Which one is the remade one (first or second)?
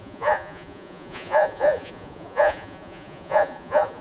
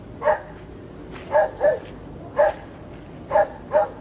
first